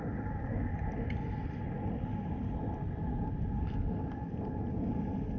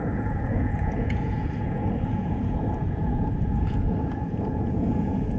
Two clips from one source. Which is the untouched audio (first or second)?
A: first